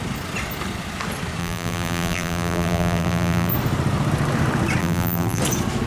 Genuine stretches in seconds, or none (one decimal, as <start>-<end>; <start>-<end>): 0.0-1.4; 3.5-4.8; 5.4-5.9